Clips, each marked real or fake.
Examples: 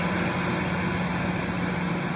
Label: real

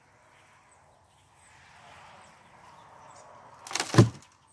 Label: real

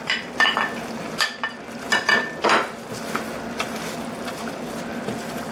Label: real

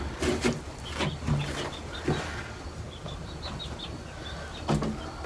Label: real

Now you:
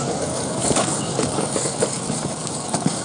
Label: fake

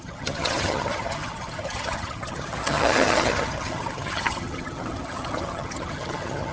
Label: fake